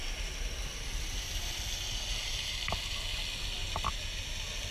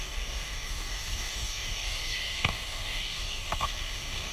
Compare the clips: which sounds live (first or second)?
first